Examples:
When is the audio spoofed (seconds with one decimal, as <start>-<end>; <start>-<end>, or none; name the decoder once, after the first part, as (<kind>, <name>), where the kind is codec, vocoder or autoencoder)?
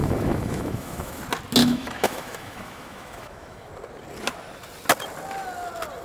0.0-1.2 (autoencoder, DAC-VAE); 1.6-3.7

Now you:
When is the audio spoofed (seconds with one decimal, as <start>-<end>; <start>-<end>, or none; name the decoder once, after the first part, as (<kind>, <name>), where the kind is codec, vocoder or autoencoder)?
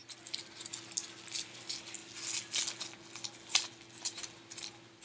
none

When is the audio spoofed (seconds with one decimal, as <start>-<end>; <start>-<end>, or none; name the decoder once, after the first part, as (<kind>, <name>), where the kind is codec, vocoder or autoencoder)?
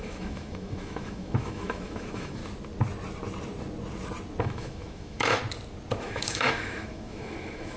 0.0-2.4 (autoencoder, DAC-VAE); 4.4-5.4; 6.0-7.8